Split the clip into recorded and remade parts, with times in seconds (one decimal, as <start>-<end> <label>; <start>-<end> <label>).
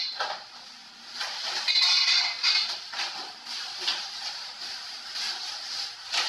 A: 0.0-6.3 recorded